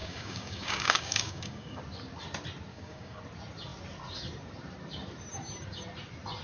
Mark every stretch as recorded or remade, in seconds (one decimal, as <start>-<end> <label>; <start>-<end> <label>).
0.0-1.8 remade; 1.8-2.7 recorded; 2.7-3.2 remade; 3.2-6.4 recorded

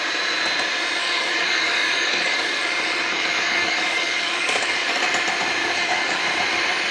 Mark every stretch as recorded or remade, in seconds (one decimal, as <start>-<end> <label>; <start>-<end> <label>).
0.0-1.0 recorded; 1.0-5.1 remade; 5.1-5.6 recorded; 5.6-6.2 remade; 6.2-6.9 recorded

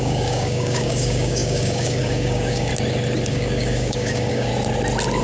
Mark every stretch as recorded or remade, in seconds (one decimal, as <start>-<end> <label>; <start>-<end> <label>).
0.0-2.7 remade; 2.7-3.3 recorded; 3.3-4.5 remade; 4.5-5.2 recorded